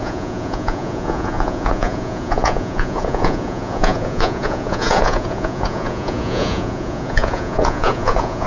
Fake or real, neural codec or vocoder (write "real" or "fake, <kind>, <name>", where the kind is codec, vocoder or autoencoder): fake, vocoder, Vocos